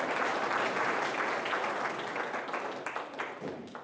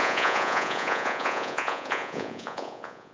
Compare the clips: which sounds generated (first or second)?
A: second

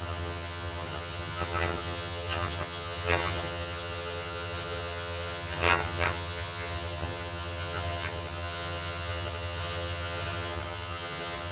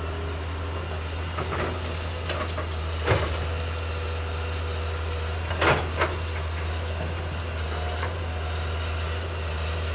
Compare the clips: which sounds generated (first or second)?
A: first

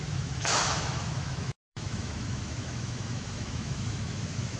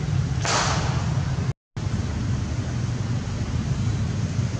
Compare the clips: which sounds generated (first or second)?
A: first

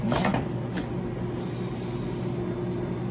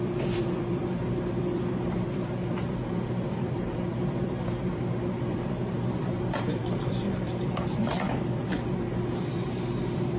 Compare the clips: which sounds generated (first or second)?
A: second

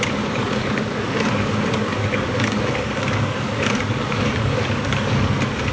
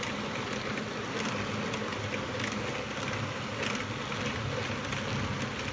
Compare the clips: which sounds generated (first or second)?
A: first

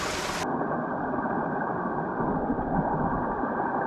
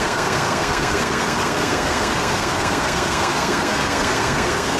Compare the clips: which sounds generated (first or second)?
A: second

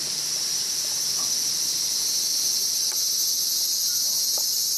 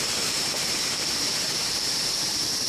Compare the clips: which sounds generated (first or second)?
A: second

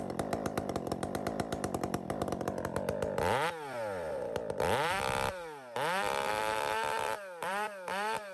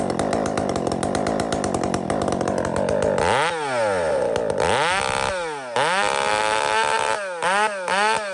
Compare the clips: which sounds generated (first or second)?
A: first